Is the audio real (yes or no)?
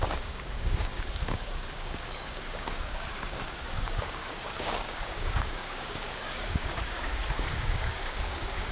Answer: no